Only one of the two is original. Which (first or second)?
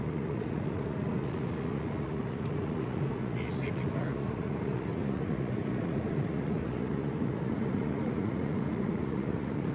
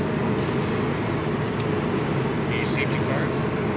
second